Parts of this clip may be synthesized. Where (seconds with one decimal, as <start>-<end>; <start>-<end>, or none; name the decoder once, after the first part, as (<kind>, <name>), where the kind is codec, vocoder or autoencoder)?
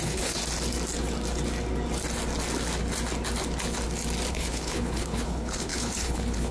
0.0-0.4 (codec, HILCodec); 4.3-6.5